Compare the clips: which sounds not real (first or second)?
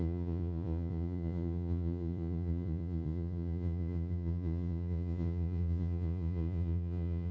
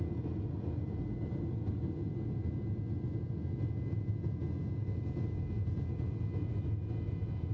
first